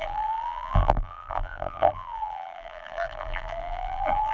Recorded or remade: remade